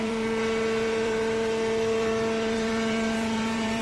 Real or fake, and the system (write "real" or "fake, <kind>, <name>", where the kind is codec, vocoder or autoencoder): fake, vocoder, BigVGAN v2